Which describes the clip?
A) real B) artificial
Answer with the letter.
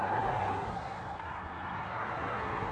B